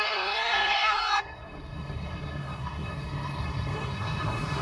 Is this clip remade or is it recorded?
remade